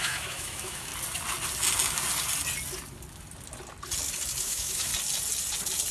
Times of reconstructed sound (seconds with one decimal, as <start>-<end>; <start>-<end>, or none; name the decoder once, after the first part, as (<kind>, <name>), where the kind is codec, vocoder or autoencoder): 0.0-0.9 (autoencoder, DAC-VAE); 4.4-4.9